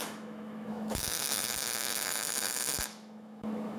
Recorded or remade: remade